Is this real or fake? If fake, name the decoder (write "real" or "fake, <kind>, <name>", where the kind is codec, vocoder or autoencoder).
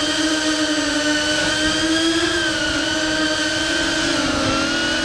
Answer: real